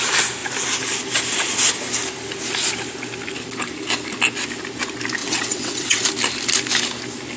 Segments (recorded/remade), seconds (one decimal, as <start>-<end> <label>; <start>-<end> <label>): 0.0-5.2 recorded; 5.2-6.0 remade; 6.0-7.4 recorded